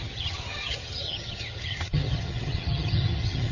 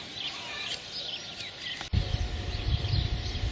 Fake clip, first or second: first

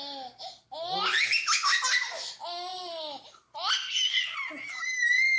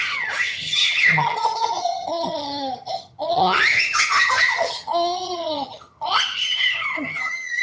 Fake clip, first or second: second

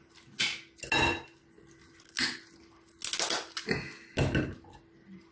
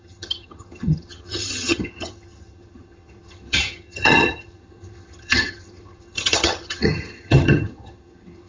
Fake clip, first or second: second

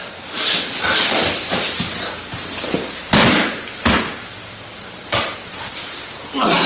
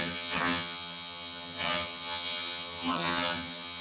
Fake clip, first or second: second